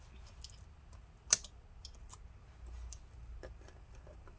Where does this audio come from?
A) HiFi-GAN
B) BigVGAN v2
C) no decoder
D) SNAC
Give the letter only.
C